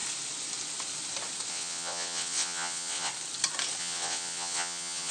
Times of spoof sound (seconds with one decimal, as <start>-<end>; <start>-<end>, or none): 1.5-3.1; 3.8-5.1